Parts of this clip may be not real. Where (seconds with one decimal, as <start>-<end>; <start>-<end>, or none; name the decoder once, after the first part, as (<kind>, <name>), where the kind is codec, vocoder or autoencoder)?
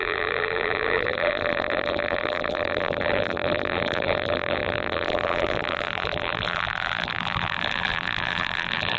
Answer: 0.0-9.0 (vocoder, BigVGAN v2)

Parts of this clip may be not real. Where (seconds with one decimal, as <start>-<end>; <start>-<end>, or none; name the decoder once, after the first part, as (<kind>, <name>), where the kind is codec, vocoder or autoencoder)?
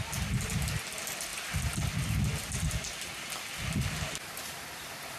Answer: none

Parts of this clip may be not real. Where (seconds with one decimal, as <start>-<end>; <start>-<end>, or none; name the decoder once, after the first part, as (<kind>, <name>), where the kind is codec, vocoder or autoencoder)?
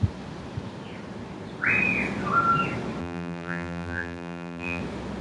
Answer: 3.0-4.8 (vocoder, BigVGAN v2)